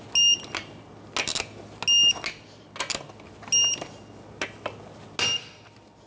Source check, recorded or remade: recorded